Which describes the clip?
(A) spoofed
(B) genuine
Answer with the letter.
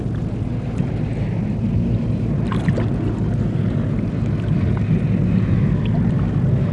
B